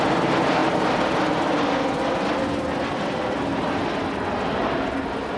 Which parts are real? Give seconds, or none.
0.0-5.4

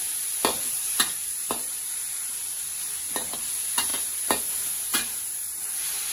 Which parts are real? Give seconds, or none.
0.0-0.4; 1.8-4.9; 5.6-6.1